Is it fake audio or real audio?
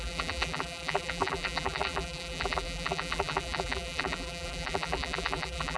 fake